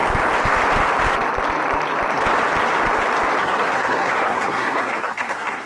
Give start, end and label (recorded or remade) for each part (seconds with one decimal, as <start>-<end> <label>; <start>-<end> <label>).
0.0-3.4 recorded; 3.4-5.7 remade